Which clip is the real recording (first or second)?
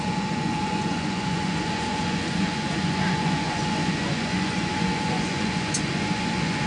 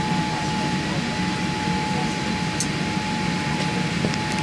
second